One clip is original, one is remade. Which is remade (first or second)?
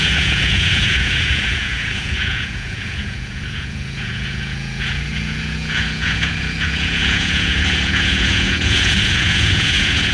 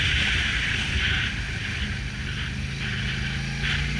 first